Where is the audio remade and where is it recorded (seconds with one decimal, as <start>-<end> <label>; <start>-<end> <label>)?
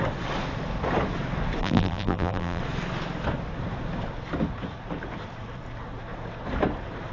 0.0-1.6 recorded; 1.6-2.6 remade; 2.6-7.1 recorded